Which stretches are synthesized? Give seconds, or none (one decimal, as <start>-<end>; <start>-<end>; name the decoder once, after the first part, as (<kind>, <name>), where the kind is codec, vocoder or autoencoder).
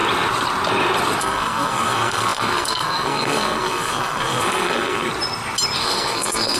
1.2-5.1 (codec, SNAC); 5.8-6.6